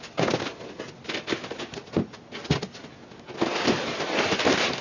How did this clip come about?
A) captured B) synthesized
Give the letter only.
A